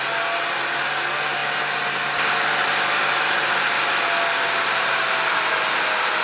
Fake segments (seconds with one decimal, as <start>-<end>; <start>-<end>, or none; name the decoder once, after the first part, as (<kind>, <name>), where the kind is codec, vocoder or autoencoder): none